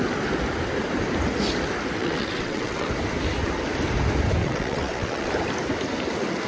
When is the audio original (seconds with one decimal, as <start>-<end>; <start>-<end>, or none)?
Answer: 0.0-2.0; 2.9-4.4; 5.3-6.5